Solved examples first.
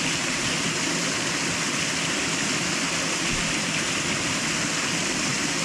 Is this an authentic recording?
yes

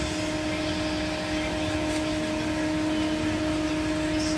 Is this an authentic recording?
yes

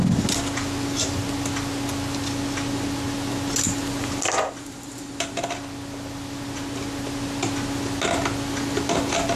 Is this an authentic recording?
yes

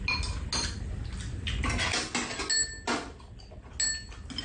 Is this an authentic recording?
yes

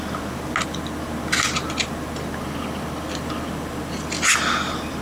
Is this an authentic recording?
yes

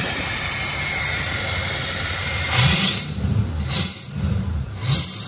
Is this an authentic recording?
no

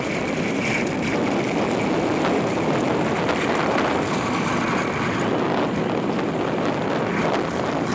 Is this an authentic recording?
yes